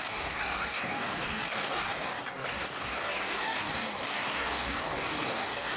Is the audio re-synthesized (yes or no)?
yes